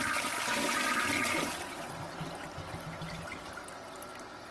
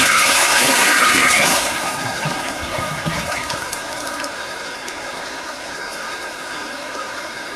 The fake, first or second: second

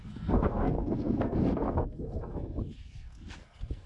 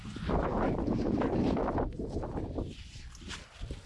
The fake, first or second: first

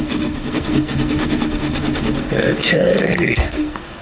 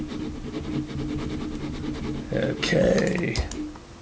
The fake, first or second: first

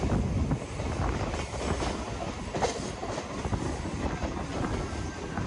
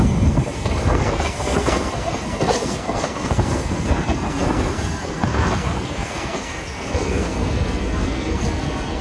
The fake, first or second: second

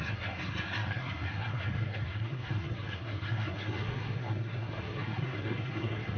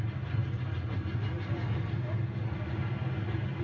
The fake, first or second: first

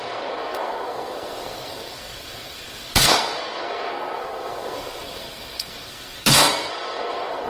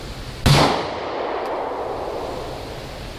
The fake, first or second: first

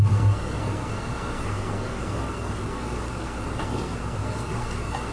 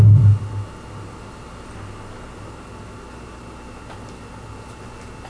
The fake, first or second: first